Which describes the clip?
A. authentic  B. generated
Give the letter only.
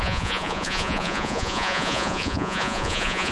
B